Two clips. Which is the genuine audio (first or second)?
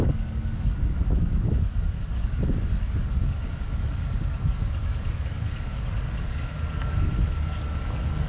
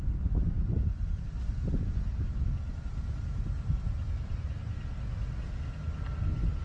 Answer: second